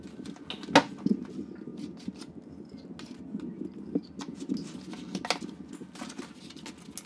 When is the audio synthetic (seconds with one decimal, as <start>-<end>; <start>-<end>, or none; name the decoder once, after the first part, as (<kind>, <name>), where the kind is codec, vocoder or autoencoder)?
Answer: none